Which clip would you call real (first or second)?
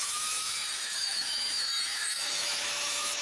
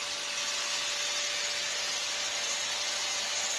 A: second